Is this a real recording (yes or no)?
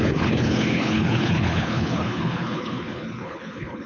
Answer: no